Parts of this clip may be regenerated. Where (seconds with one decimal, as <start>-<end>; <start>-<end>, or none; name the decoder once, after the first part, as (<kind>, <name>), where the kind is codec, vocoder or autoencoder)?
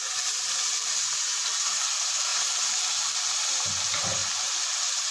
0.0-5.1 (vocoder, BigVGAN v2)